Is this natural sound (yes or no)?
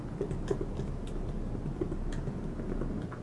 yes